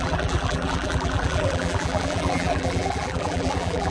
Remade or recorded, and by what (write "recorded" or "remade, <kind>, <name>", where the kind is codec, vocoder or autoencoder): remade, vocoder, BigVGAN v2